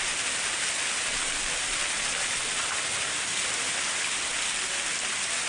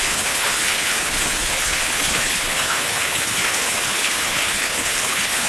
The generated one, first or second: second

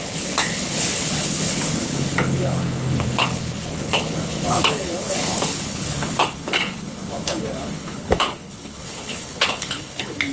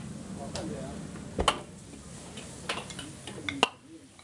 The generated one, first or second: first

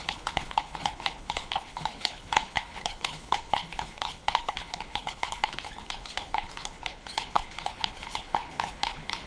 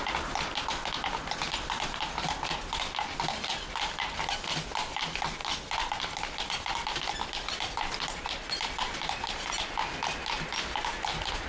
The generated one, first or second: first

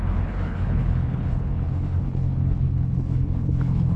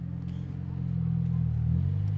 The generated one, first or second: first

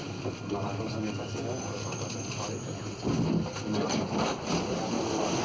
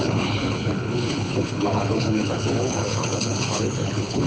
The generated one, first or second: second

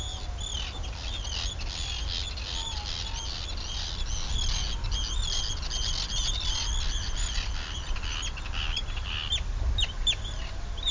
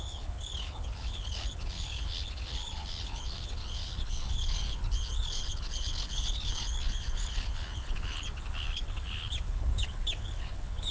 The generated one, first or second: second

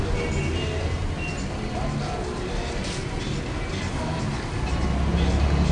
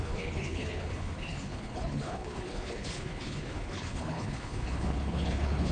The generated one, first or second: second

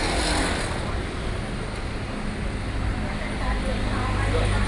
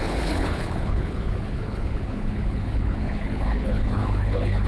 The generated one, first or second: second